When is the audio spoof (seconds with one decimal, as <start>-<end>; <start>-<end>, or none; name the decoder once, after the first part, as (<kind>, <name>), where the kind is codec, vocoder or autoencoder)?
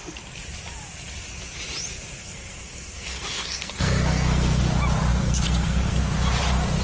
2.2-4.6 (codec, SNAC); 5.1-6.0